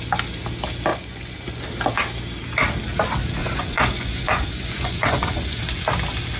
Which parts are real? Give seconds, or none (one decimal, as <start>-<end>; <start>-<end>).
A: 0.0-0.9; 1.6-3.4; 5.6-6.4